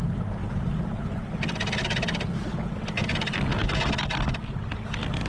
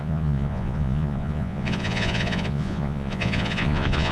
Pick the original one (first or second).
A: first